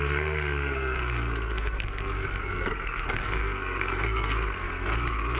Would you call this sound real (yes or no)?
no